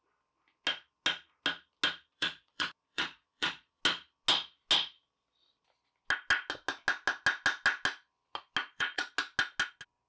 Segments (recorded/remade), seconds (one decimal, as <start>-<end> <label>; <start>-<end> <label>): 0.0-2.1 recorded; 2.1-3.8 remade; 3.8-8.6 recorded; 8.6-9.1 remade; 9.1-10.1 recorded